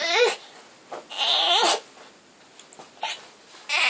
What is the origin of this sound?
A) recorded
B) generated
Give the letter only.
A